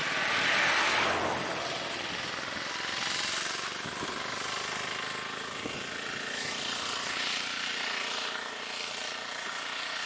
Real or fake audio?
real